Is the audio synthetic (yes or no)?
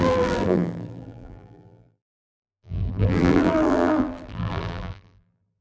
yes